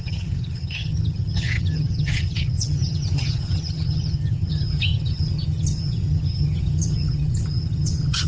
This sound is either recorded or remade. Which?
remade